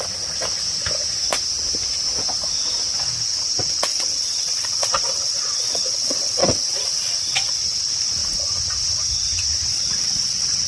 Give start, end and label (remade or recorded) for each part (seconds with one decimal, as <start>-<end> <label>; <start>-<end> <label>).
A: 0.0-3.9 recorded; 3.9-7.5 remade; 7.5-9.7 recorded; 9.7-10.7 remade